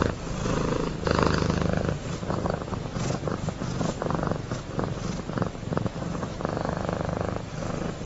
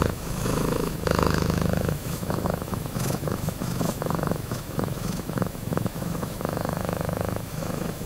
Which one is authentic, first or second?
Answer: first